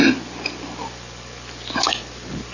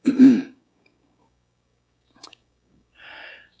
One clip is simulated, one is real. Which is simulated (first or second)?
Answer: second